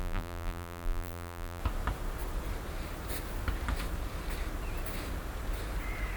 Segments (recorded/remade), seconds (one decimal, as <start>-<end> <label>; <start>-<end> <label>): 0.0-1.6 remade; 1.6-6.2 recorded